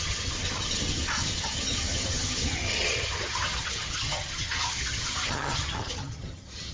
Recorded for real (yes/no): no